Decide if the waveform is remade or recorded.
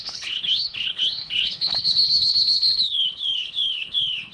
remade